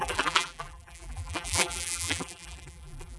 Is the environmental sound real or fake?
fake